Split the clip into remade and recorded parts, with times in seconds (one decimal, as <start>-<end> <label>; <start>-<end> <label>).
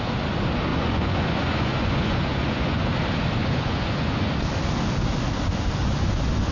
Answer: 0.0-0.7 recorded; 0.7-2.8 remade; 2.8-3.4 recorded; 3.4-4.3 remade; 4.3-5.8 recorded; 5.8-6.5 remade